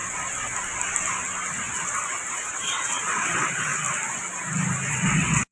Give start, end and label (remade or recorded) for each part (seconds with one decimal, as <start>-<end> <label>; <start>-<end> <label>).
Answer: 0.0-2.3 recorded; 2.3-3.7 remade; 3.7-4.9 recorded; 4.9-5.5 remade